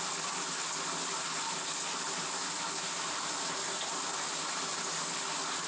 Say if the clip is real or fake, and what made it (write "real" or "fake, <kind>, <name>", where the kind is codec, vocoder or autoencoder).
real